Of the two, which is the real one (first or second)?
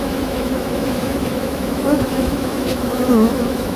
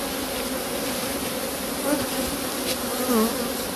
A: second